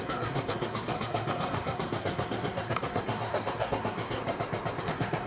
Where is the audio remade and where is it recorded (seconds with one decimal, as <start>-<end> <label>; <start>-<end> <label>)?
0.0-4.2 remade; 4.2-4.8 recorded; 4.8-5.3 remade